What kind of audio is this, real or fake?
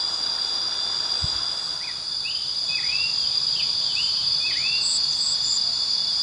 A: real